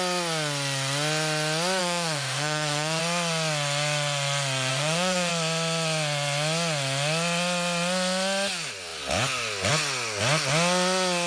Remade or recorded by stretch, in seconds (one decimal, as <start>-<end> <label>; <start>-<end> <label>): 0.0-1.8 recorded; 1.8-3.0 remade; 3.0-4.7 recorded; 4.7-5.3 remade; 5.3-11.3 recorded